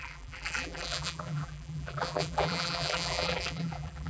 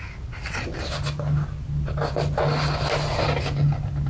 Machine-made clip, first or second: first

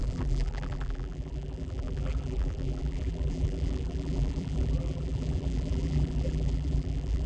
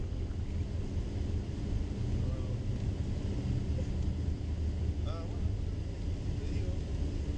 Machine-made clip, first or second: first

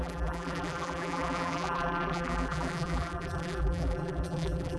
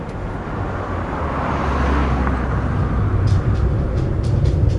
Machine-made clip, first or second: first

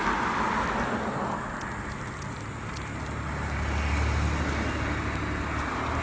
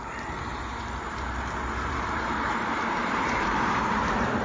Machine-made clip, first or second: second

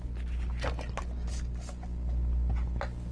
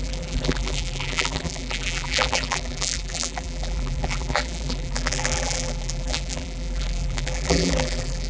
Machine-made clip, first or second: second